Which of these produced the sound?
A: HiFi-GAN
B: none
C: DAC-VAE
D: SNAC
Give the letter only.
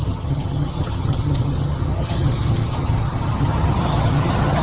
A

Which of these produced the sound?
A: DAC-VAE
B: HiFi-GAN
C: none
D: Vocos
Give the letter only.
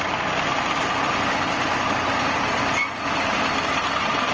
C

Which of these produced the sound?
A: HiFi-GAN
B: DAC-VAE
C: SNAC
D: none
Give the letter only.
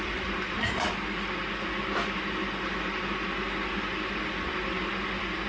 D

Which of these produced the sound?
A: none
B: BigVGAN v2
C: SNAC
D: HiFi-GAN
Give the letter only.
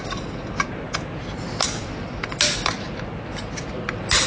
A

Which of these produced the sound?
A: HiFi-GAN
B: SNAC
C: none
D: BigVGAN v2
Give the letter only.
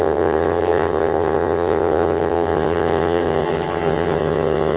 A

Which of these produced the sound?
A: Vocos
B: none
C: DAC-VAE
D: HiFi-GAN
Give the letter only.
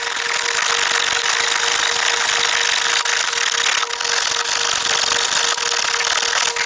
B